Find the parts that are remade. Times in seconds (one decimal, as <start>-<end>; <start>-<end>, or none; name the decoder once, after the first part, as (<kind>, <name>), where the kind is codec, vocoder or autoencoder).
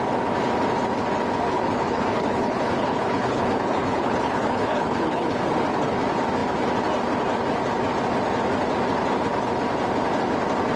1.5-5.4 (codec, HILCodec)